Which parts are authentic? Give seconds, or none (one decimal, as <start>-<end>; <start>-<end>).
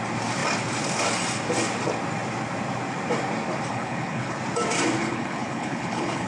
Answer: 0.0-3.7; 4.4-5.0